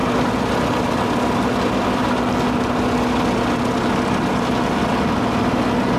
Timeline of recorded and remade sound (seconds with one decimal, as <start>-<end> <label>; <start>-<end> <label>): 0.0-6.0 recorded